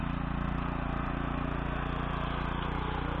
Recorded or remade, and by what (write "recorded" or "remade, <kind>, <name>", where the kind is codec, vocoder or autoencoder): recorded